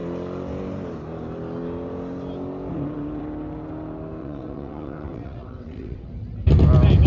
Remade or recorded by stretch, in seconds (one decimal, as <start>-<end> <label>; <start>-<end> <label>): 0.0-4.2 recorded; 4.2-6.1 remade; 6.1-7.1 recorded